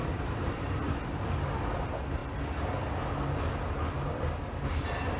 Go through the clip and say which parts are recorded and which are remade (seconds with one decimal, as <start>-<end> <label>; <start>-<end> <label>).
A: 0.0-1.0 remade; 1.0-5.2 recorded